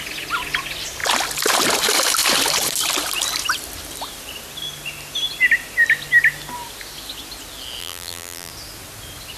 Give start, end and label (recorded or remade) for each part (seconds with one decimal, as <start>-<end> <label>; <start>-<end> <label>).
0.0-7.8 recorded; 7.8-8.5 remade; 8.5-9.4 recorded